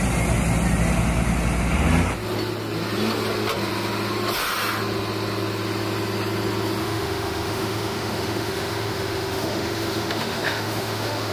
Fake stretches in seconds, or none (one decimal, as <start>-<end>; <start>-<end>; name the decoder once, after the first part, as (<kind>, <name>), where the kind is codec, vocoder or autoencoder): 6.8-11.3 (autoencoder, DAC-VAE)